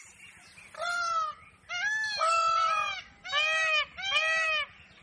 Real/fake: real